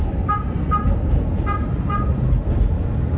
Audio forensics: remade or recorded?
recorded